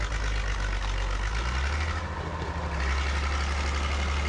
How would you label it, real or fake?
real